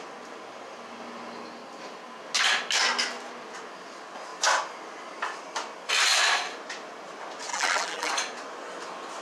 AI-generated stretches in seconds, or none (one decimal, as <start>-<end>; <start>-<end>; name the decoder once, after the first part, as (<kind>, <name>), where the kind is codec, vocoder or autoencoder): 7.5-8.1 (vocoder, BigVGAN v2)